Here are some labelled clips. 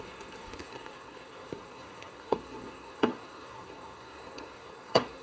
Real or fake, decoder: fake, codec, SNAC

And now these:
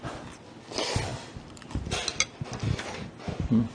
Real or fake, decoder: real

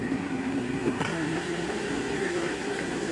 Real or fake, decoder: fake, codec, SNAC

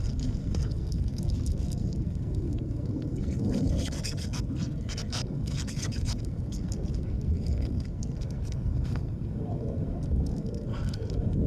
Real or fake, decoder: fake, codec, SNAC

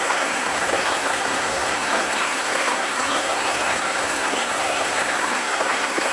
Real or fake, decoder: fake, codec, SNAC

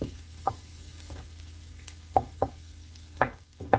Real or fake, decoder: fake, codec, SNAC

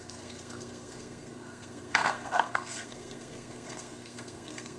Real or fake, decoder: fake, codec, SNAC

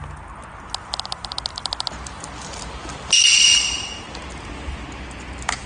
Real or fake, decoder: real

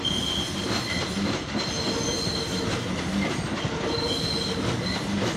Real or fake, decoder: real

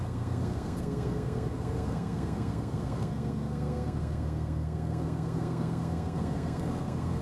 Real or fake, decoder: fake, codec, SNAC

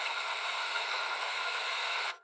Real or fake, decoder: fake, codec, SNAC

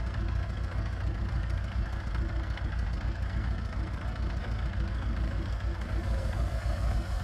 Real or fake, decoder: fake, codec, SNAC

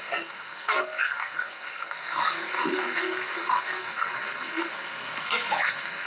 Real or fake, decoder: fake, codec, SNAC